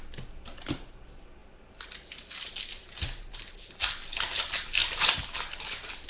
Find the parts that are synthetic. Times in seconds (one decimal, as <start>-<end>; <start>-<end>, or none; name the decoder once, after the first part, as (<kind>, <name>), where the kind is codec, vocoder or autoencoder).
none

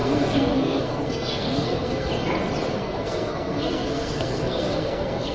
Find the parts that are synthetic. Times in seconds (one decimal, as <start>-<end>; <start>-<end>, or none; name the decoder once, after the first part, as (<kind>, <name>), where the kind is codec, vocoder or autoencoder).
0.0-2.1 (codec, SNAC); 2.7-5.3